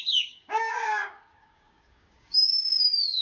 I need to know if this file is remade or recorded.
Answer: remade